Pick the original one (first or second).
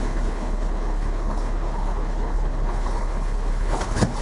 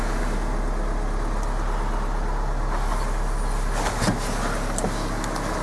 second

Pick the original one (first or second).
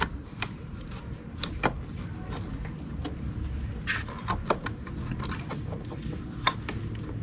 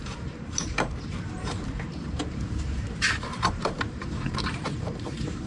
first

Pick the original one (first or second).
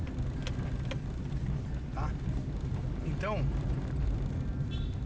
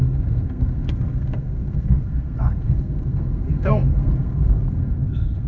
first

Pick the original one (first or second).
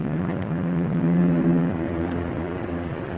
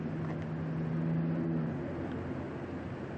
second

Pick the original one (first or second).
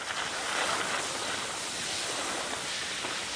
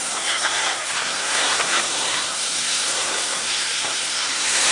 first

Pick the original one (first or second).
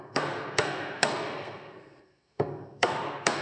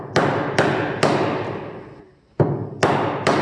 second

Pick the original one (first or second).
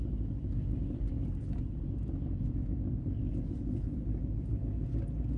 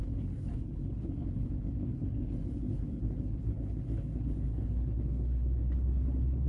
first